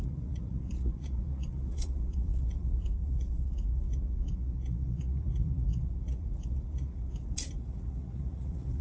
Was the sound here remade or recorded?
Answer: remade